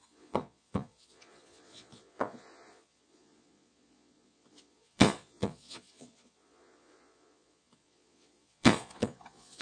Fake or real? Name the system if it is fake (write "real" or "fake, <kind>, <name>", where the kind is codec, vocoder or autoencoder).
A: fake, vocoder, Vocos